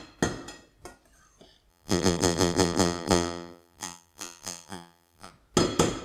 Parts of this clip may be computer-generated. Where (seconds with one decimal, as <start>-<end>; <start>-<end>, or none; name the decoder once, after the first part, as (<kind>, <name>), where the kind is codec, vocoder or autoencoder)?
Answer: 1.7-5.3 (vocoder, BigVGAN v2)